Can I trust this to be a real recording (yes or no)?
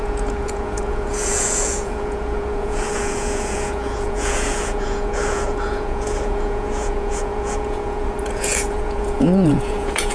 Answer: no